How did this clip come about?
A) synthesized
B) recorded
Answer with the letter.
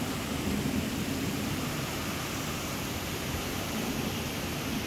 A